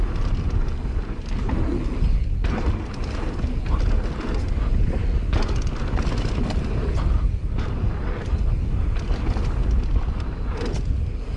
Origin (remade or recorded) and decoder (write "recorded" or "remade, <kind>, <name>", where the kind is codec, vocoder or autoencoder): recorded